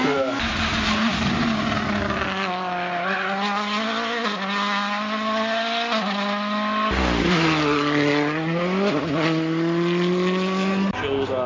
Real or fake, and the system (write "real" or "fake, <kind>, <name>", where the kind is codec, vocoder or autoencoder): real